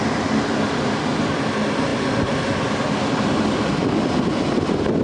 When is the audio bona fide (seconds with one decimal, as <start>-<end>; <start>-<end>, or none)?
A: 0.0-5.0